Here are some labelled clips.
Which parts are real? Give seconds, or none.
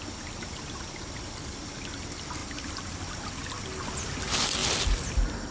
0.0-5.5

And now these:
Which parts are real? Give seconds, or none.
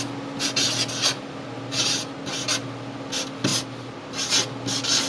0.0-5.1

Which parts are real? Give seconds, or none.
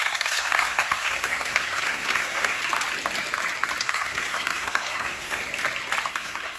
2.6-3.8; 5.4-6.1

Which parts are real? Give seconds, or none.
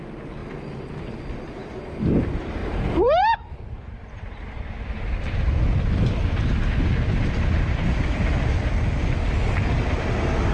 0.0-2.6; 5.5-10.5